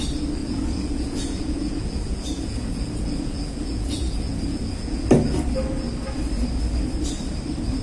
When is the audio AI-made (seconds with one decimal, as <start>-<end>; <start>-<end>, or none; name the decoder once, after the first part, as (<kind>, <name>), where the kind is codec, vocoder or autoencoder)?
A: 0.4-5.1 (vocoder, Vocos)